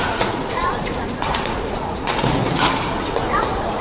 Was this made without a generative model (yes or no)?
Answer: no